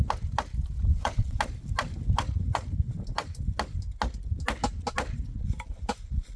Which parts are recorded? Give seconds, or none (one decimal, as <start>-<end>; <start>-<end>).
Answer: 0.0-0.9; 1.4-6.4